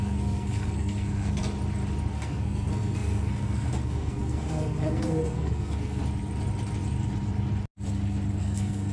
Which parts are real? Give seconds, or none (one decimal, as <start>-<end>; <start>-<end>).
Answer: 1.4-2.1; 6.0-8.4